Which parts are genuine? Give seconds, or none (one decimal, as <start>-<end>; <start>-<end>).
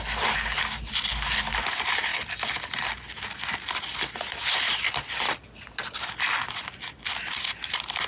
0.0-8.1